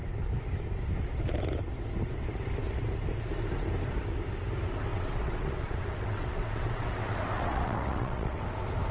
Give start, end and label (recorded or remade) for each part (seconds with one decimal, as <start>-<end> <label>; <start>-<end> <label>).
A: 0.0-4.9 recorded; 4.9-8.4 remade; 8.4-8.9 recorded